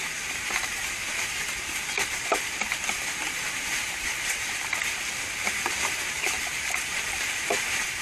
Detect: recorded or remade remade